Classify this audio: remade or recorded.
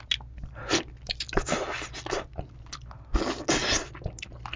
recorded